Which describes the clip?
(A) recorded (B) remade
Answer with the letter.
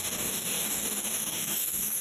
B